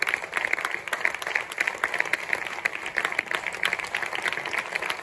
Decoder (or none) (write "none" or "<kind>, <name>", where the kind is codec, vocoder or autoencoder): none